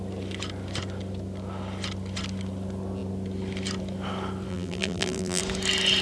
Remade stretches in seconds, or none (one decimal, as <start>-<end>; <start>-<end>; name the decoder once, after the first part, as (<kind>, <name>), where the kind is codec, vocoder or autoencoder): 4.5-5.4 (vocoder, BigVGAN v2)